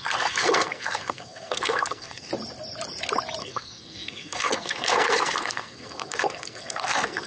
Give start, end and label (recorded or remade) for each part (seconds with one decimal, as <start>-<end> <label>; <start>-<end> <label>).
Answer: 0.0-2.3 remade; 2.3-3.4 recorded; 3.4-7.3 remade